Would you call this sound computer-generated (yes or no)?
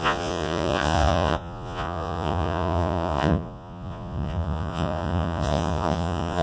yes